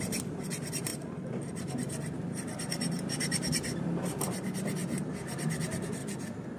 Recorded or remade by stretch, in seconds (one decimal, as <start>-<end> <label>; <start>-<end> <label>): 0.0-6.0 remade; 6.0-6.6 recorded

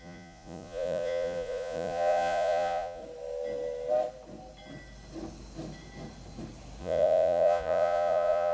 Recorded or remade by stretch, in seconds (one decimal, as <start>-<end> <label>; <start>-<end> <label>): 0.0-3.0 remade; 3.0-6.8 recorded; 6.8-8.5 remade